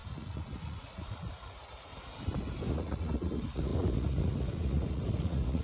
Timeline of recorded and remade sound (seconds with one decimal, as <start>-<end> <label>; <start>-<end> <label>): 0.0-1.9 remade; 1.9-2.7 recorded; 2.7-5.6 remade